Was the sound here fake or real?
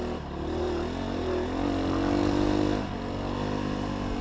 real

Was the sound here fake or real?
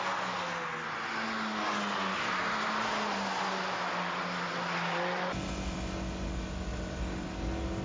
real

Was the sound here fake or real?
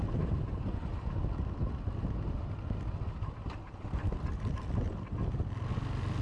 real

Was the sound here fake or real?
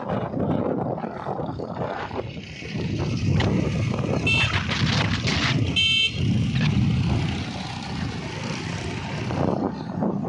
real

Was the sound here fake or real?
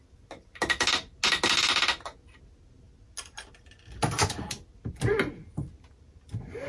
real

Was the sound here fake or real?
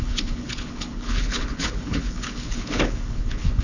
fake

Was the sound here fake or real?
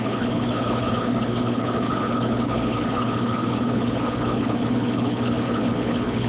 fake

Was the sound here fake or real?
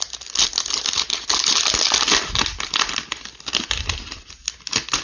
real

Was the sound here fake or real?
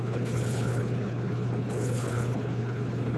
fake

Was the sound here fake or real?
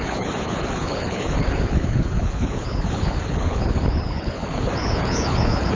fake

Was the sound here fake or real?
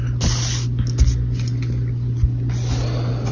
real